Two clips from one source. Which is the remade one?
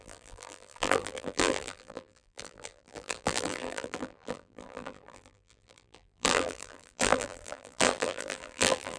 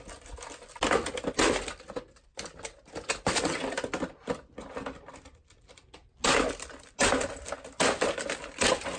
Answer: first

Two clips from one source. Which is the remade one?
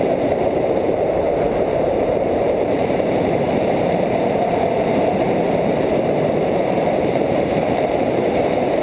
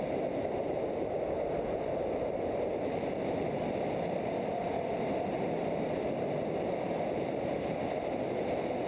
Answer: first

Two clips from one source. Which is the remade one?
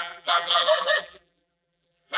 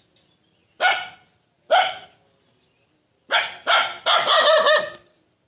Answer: first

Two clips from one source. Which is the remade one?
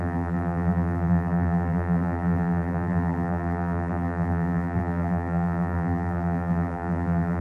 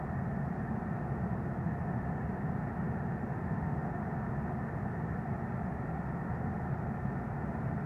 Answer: first